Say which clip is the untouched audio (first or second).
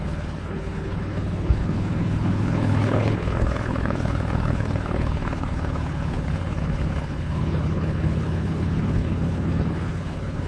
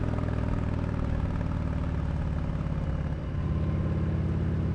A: second